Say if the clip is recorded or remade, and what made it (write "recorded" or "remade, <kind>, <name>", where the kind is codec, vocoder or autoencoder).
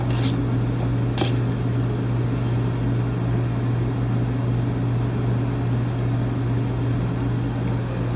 recorded